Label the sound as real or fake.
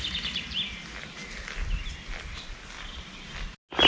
real